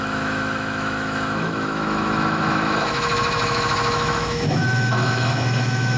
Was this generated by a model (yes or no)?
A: yes